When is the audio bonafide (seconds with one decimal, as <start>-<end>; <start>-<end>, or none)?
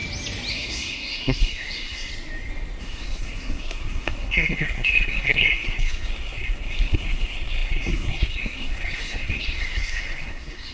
0.0-0.5; 2.1-2.8